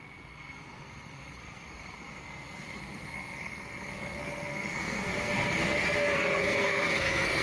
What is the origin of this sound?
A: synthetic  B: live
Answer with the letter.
A